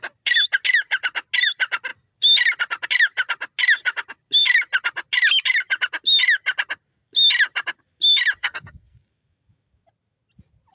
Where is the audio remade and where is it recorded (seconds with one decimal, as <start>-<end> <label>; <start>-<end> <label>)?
0.0-8.4 recorded; 8.4-9.1 remade; 9.1-10.7 recorded